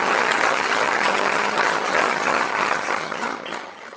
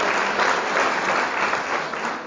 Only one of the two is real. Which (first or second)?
second